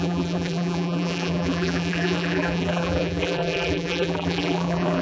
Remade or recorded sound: remade